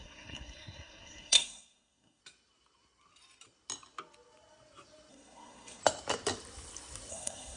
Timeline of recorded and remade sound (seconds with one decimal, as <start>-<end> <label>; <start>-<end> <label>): 0.0-2.2 remade; 2.2-5.1 recorded; 5.1-5.8 remade; 5.8-7.1 recorded; 7.1-7.6 remade